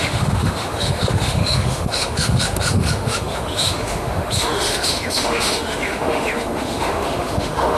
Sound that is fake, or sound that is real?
fake